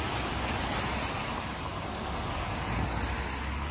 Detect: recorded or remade recorded